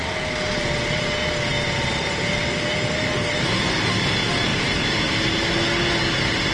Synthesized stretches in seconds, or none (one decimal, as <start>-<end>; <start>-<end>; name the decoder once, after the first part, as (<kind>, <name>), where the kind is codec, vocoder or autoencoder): 4.5-5.4 (vocoder, BigVGAN v2)